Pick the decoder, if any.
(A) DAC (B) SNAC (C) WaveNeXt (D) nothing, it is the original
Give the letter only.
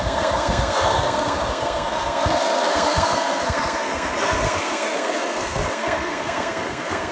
B